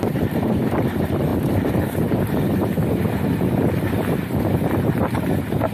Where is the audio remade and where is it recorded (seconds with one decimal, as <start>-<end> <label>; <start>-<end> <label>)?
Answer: 0.0-1.3 remade; 1.3-4.7 recorded; 4.7-5.7 remade